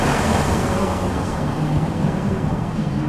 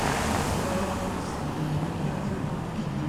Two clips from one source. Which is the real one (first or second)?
second